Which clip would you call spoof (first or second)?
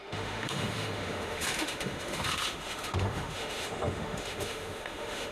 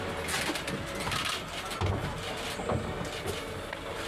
first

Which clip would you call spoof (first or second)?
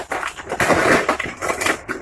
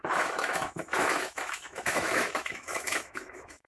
second